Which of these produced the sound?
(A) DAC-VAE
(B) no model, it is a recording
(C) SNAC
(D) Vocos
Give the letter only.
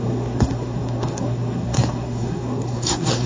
C